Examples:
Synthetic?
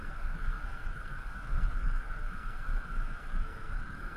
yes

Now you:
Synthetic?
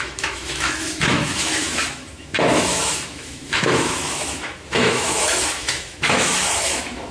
yes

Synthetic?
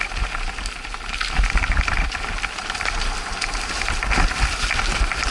no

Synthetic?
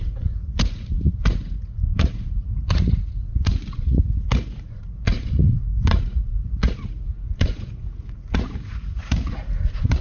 yes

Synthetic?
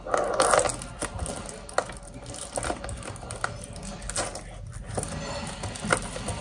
no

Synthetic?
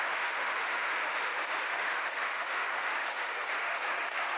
yes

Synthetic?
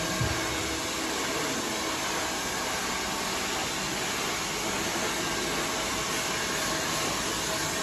no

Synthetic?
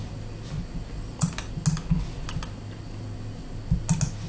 no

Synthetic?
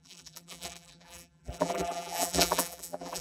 yes